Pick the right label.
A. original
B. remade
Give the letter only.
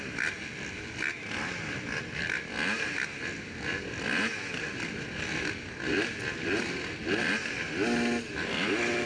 A